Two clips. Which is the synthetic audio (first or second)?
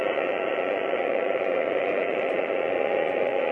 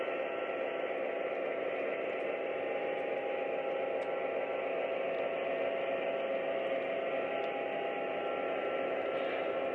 first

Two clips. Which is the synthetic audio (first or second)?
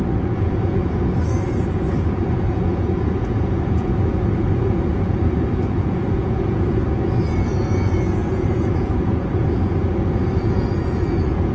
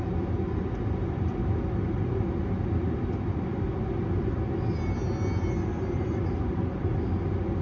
first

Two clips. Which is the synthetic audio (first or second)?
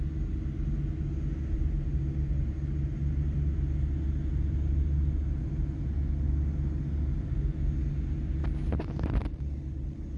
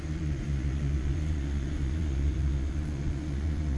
second